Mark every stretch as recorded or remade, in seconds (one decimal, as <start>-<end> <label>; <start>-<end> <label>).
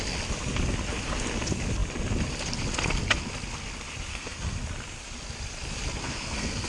0.0-4.1 recorded; 4.1-4.6 remade; 4.6-6.0 recorded; 6.0-6.7 remade